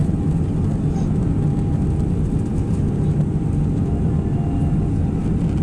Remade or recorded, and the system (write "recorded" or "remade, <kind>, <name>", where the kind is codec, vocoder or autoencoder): recorded